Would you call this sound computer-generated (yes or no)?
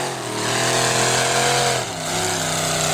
no